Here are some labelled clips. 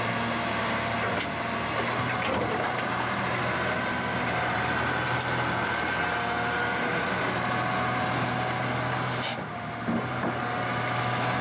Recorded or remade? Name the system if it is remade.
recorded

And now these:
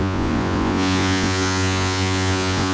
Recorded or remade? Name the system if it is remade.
remade, vocoder, Vocos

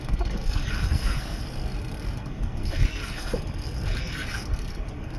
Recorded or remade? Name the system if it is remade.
remade, codec, SNAC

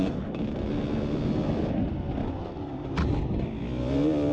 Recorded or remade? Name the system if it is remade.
recorded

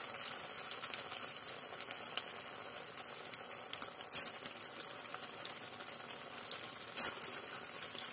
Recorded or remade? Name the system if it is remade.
recorded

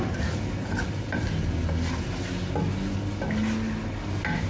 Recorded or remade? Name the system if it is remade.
recorded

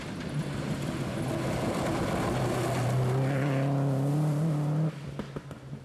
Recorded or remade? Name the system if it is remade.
recorded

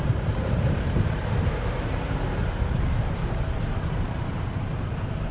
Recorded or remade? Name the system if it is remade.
remade, vocoder, BigVGAN v2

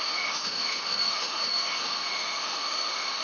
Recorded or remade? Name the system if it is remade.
remade, autoencoder, DAC-VAE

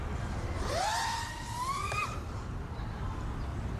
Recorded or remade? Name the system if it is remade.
recorded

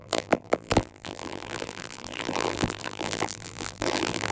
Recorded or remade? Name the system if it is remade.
remade, vocoder, BigVGAN v2